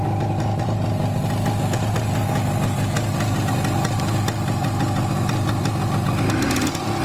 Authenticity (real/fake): real